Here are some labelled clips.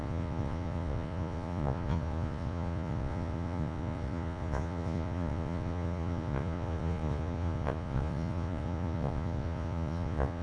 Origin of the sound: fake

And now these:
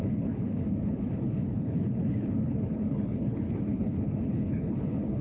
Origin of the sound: fake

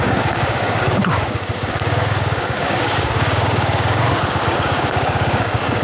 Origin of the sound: fake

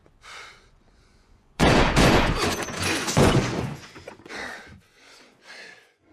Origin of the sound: fake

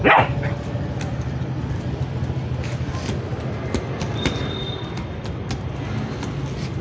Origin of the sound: real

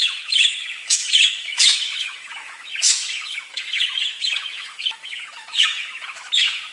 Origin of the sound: fake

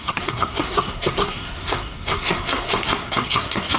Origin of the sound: fake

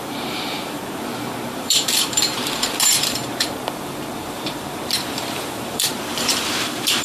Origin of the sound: fake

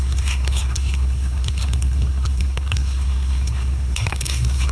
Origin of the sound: fake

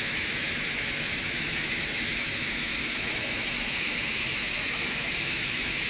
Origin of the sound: fake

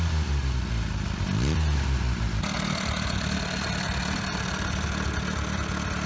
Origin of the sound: real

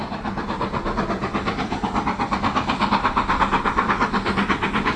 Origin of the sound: real